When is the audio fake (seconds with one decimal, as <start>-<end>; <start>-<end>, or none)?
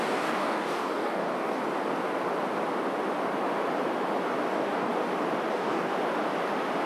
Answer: 0.0-1.6; 4.5-4.9; 5.5-5.9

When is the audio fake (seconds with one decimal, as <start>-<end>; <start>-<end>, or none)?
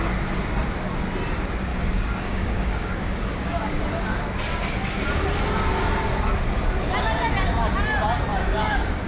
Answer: 1.7-3.8; 8.3-9.1